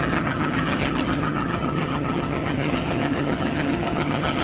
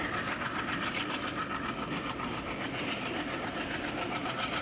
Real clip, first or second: second